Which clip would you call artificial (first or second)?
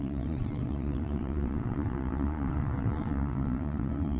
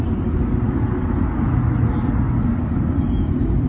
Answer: first